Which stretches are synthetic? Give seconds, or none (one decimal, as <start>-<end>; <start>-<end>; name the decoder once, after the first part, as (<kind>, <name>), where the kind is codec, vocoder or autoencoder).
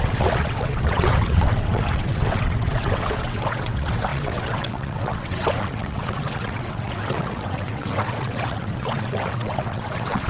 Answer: 0.0-10.3 (vocoder, WaveNeXt)